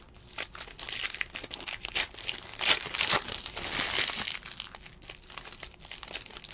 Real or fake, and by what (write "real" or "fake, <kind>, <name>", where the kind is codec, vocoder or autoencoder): real